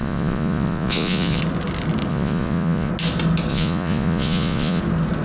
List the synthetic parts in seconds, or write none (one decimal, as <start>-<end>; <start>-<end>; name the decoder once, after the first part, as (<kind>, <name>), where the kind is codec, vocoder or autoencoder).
0.0-1.4 (vocoder, Vocos); 2.1-2.9; 3.5-4.8